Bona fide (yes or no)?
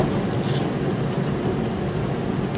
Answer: yes